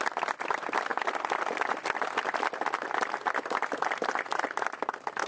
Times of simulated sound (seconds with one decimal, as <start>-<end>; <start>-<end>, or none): none